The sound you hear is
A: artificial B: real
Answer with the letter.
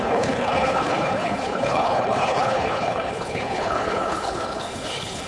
A